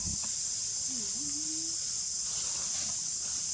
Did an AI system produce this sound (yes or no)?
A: no